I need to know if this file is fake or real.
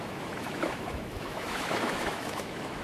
fake